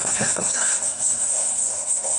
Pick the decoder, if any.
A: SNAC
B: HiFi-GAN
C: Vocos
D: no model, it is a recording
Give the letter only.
A